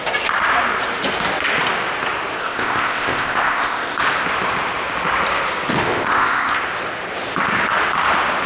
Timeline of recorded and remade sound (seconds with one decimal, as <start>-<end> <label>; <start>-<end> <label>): 0.0-2.4 recorded; 2.4-4.0 remade; 4.0-5.8 recorded; 5.8-6.6 remade; 6.6-8.5 recorded

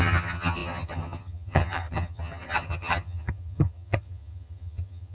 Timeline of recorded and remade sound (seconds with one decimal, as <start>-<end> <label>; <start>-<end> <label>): 0.0-5.1 remade

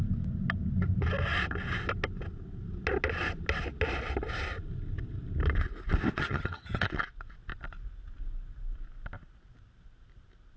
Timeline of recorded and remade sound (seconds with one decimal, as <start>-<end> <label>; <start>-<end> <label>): 0.0-6.2 recorded; 6.2-6.9 remade; 6.9-10.6 recorded

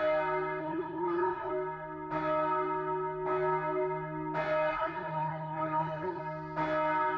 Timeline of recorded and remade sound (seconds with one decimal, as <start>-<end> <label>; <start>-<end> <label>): 0.0-0.6 recorded; 0.6-1.5 remade; 1.5-4.7 recorded; 4.7-6.2 remade; 6.2-7.2 recorded

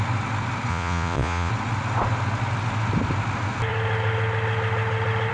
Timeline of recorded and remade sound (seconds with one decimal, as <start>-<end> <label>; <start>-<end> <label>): 0.0-0.7 recorded; 0.7-1.5 remade; 1.5-5.3 recorded

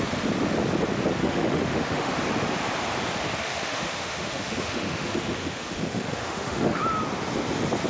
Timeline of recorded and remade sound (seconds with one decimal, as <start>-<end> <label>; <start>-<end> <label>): 0.0-1.2 recorded; 1.2-2.1 remade; 2.1-3.4 recorded; 3.4-6.8 remade; 6.8-7.9 recorded